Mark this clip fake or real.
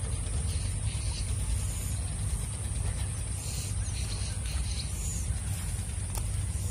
real